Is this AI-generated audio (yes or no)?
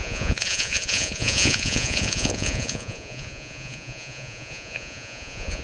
yes